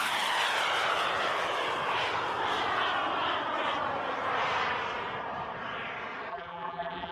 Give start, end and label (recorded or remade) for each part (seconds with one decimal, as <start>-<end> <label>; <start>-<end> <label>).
0.0-6.3 recorded; 6.3-7.1 remade